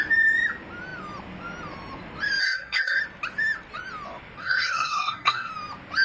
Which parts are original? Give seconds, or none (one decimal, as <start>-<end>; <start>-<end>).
0.0-2.4; 3.0-4.4; 5.5-6.0